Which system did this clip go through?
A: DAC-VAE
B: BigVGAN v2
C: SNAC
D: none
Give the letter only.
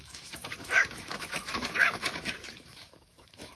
A